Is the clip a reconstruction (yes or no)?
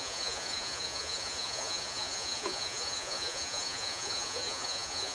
yes